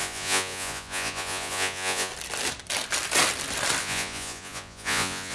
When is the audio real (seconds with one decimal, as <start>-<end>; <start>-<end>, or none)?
2.1-3.8